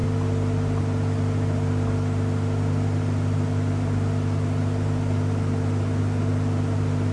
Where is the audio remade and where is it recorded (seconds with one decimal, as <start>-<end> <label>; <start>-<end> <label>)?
0.0-7.1 recorded